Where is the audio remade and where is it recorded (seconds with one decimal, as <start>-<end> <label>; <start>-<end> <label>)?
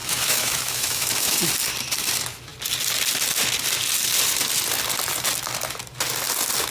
0.0-1.4 remade; 1.4-6.7 recorded